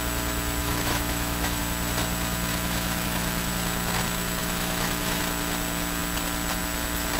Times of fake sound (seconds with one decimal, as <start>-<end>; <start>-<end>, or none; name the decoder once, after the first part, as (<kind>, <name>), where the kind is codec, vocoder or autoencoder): 0.6-1.6 (autoencoder, DAC-VAE); 2.5-3.5; 4.4-5.2